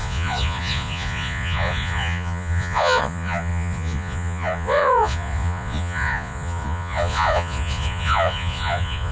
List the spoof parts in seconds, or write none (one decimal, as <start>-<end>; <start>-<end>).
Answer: 0.0-9.1